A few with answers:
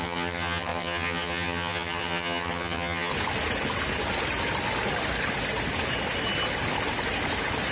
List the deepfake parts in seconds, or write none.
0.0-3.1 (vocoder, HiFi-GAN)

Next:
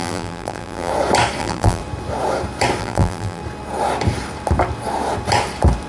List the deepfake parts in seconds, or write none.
0.0-0.9 (vocoder, BigVGAN v2); 1.4-1.8; 2.8-3.4

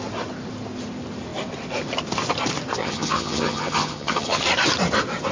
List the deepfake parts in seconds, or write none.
2.8-4.4 (vocoder, HiFi-GAN)

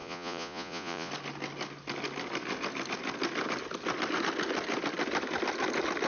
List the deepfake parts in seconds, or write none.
0.0-1.1 (vocoder, Vocos)

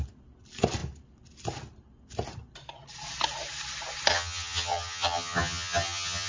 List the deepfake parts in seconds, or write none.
4.1-6.3 (vocoder, HiFi-GAN)

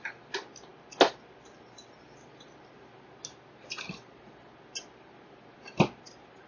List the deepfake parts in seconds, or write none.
none

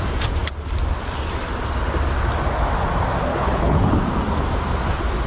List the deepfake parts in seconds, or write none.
3.3-3.9 (codec, HILCodec)

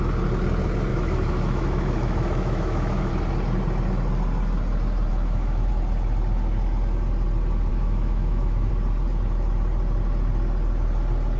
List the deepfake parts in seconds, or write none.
0.9-3.1 (autoencoder, DAC-VAE); 5.1-5.7; 7.7-8.7